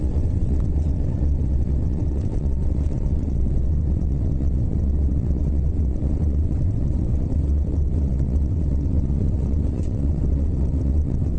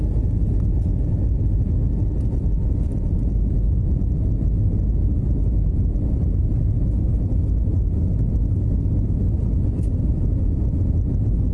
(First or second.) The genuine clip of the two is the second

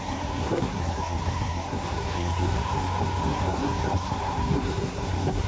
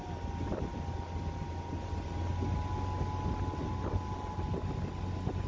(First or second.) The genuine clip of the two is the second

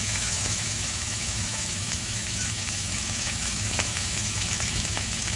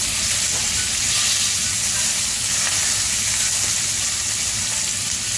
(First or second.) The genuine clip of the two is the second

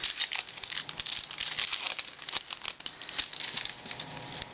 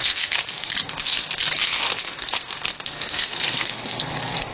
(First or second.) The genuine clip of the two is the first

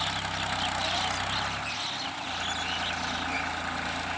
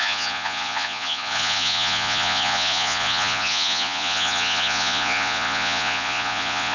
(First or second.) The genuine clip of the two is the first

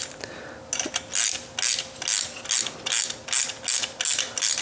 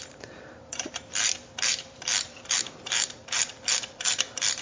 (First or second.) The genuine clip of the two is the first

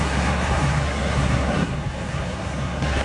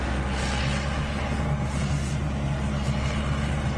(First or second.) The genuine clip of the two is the second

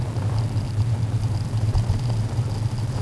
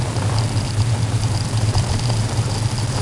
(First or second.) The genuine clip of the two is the first